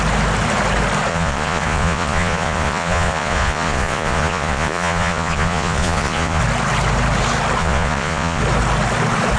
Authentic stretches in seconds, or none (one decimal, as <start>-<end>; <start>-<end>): 0.0-1.1; 6.4-7.6; 8.4-9.4